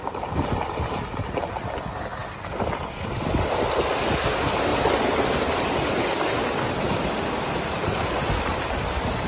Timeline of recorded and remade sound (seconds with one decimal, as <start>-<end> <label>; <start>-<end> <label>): 0.0-9.3 recorded